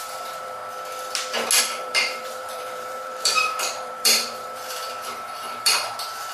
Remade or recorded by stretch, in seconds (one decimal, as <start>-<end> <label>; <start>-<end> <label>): 0.0-0.6 remade; 0.6-1.6 recorded; 1.6-6.3 remade